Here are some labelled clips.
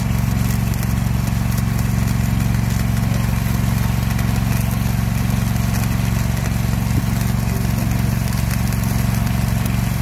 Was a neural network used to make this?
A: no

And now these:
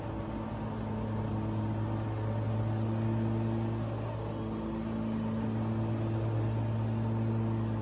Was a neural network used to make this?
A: no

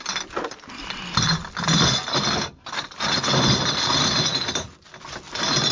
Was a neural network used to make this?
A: no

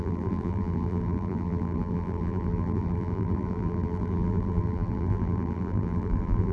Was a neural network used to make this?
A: yes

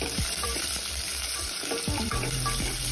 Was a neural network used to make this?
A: yes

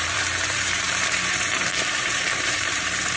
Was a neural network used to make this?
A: yes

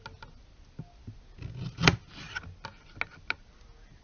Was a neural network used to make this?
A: no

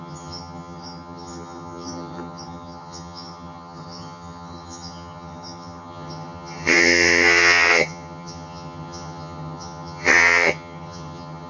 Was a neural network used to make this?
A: yes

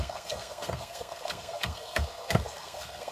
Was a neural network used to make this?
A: yes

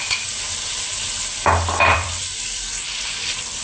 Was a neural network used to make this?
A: yes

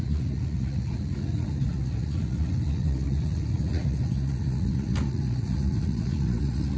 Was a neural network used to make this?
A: yes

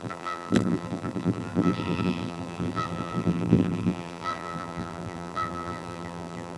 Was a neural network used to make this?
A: yes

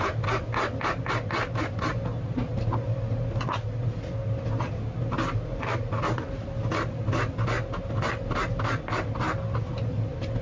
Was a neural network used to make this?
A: no